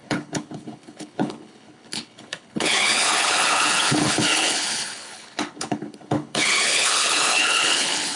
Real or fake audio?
fake